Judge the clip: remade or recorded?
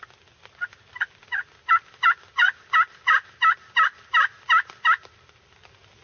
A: recorded